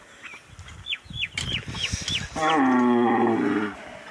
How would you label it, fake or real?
real